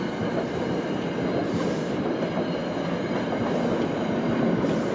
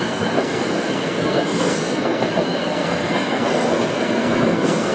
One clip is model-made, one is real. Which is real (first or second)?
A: first